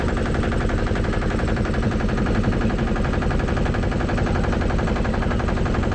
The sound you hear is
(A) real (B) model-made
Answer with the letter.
A